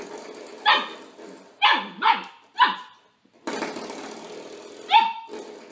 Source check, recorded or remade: recorded